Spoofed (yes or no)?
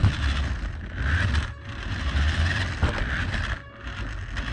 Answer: no